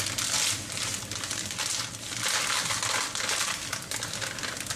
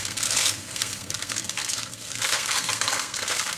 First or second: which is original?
first